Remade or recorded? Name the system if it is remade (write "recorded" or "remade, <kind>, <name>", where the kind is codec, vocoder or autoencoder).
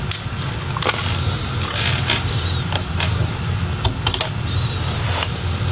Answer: recorded